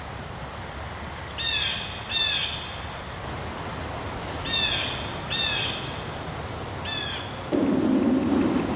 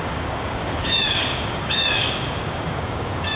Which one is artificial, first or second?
second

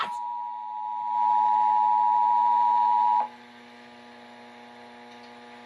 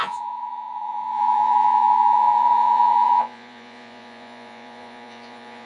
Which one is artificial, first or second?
second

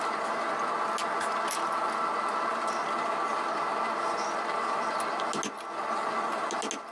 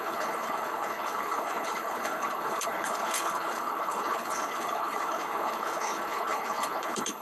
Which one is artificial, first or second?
second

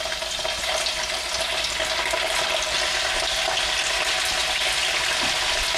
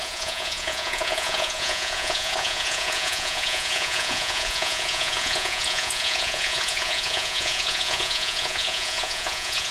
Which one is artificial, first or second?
second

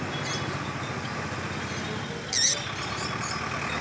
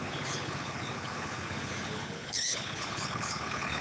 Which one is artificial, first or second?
second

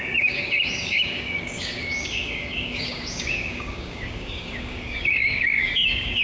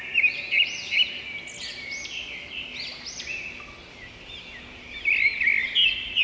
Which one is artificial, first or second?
first